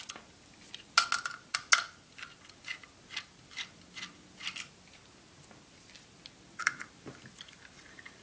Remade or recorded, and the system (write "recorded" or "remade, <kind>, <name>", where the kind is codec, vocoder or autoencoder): recorded